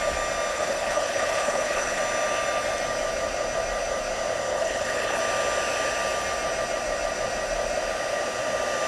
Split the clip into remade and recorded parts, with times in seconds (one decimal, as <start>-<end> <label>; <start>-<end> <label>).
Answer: 0.0-0.5 recorded; 0.5-2.0 remade; 2.0-4.5 recorded; 4.5-5.2 remade; 5.2-8.9 recorded